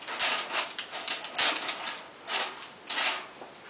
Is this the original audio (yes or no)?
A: yes